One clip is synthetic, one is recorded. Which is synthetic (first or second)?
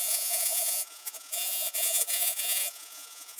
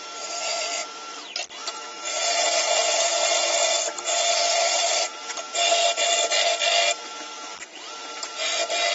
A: first